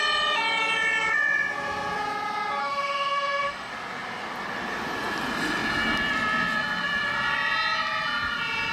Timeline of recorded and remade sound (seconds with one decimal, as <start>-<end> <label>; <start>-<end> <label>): 0.0-2.6 recorded; 2.6-3.7 remade; 3.7-8.7 recorded